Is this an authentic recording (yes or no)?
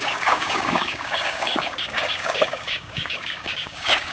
no